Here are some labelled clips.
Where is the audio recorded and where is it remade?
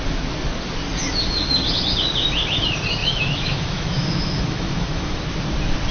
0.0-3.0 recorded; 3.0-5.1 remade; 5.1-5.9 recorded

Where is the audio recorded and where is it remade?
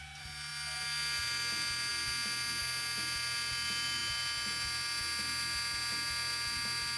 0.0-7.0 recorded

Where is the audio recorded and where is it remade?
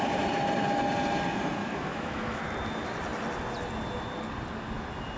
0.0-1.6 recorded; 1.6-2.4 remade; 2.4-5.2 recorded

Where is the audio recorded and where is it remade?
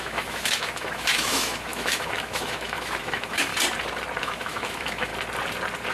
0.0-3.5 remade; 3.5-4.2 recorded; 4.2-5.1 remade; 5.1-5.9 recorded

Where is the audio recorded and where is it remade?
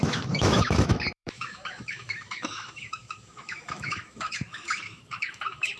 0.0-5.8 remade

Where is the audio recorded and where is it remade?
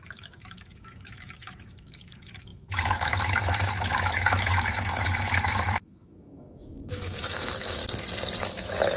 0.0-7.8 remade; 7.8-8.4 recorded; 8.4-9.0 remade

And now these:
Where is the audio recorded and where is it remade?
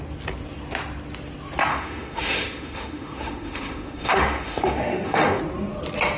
0.0-1.7 recorded; 1.7-5.4 remade; 5.4-6.2 recorded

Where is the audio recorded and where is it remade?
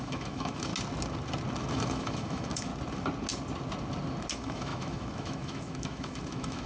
0.0-0.7 remade; 0.7-1.7 recorded; 1.7-2.7 remade; 2.7-4.3 recorded; 4.3-6.7 remade